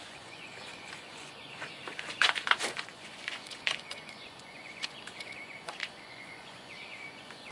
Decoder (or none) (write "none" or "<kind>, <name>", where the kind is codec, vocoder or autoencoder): vocoder, Vocos